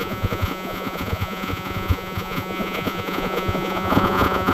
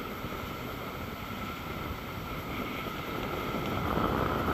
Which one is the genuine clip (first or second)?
second